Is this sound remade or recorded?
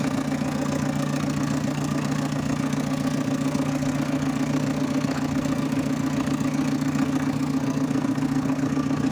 remade